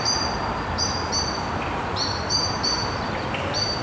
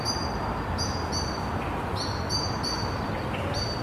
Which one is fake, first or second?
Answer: first